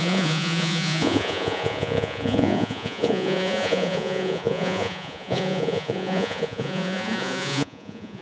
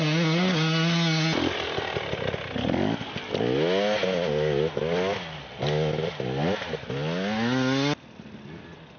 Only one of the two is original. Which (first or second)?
second